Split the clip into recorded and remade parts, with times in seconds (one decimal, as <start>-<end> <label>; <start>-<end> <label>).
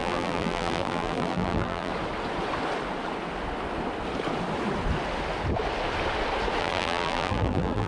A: 0.0-1.9 remade; 1.9-6.6 recorded; 6.6-7.9 remade